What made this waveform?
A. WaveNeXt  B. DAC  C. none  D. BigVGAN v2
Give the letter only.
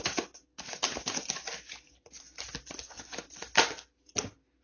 C